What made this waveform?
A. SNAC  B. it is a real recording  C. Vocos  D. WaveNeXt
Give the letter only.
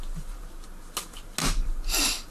B